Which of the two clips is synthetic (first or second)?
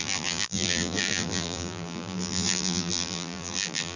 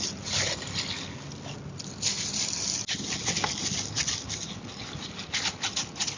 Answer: first